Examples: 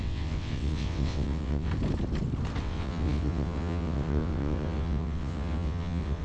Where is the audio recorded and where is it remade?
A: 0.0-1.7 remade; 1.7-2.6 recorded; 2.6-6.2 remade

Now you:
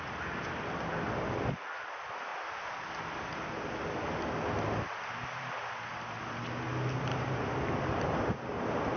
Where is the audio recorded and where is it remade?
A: 0.0-7.1 recorded; 7.1-8.2 remade; 8.2-9.0 recorded

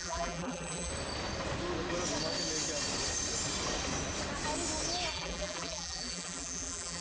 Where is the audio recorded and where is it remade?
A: 0.0-0.9 remade; 0.9-5.1 recorded; 5.1-7.0 remade

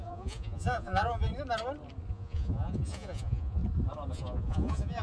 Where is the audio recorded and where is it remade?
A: 0.0-1.3 remade; 1.3-2.1 recorded; 2.1-3.6 remade; 3.6-4.1 recorded; 4.1-5.0 remade

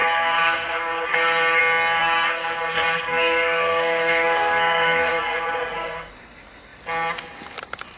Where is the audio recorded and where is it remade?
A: 0.0-1.6 remade; 1.6-2.0 recorded; 2.0-6.1 remade; 6.1-8.0 recorded

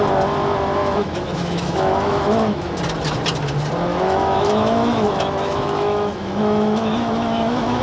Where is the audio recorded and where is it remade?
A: 0.0-0.8 recorded; 0.8-2.8 remade; 2.8-3.9 recorded; 3.9-7.8 remade

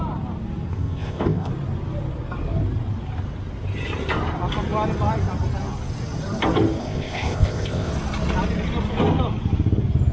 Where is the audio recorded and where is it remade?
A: 0.0-0.7 recorded; 0.7-1.5 remade; 1.5-6.8 recorded; 6.8-7.9 remade; 7.9-10.1 recorded

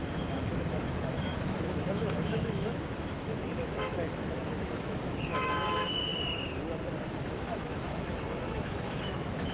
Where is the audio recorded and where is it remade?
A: 0.0-6.1 remade; 6.1-7.1 recorded; 7.1-9.5 remade